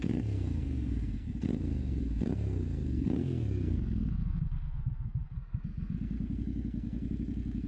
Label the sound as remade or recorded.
remade